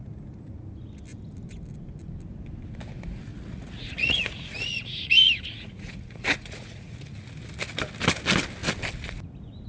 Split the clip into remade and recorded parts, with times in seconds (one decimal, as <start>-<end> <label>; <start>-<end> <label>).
0.0-3.3 recorded; 3.3-7.0 remade; 7.0-9.7 recorded